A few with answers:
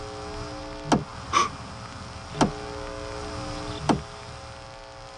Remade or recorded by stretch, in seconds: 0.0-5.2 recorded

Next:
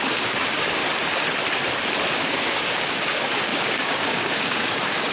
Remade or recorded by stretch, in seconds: 0.0-0.8 remade; 0.8-2.1 recorded; 2.1-5.1 remade

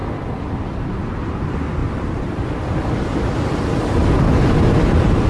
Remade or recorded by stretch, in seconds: 0.0-1.8 recorded; 1.8-4.5 remade; 4.5-5.3 recorded

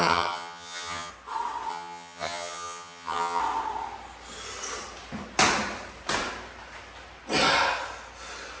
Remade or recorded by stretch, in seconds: 0.0-1.1 remade; 1.1-1.7 recorded; 1.7-3.4 remade; 3.4-8.6 recorded

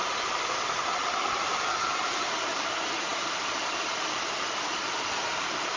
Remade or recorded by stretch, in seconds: 0.0-5.8 recorded

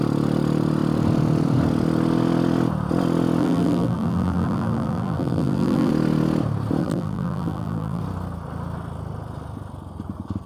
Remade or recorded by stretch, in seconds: 0.0-3.4 recorded; 3.4-5.9 remade; 5.9-6.8 recorded; 6.8-8.0 remade; 8.0-10.5 recorded

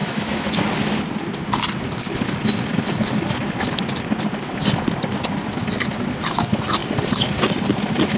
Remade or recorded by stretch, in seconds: 0.0-0.5 remade; 0.5-8.2 recorded